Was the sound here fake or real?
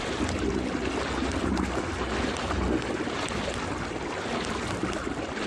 real